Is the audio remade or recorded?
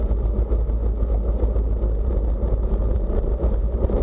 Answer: recorded